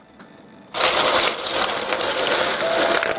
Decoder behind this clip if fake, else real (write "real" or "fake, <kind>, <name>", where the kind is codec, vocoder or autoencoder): fake, vocoder, BigVGAN v2